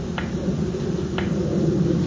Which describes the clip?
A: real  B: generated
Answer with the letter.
A